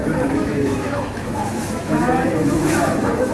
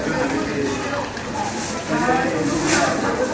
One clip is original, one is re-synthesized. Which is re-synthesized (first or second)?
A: first